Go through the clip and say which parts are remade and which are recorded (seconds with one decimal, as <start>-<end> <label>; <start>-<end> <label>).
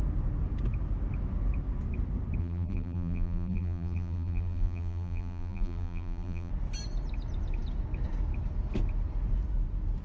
0.0-2.4 recorded; 2.4-6.5 remade; 6.5-10.0 recorded